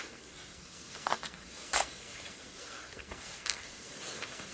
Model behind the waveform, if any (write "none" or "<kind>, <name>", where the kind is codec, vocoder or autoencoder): codec, SNAC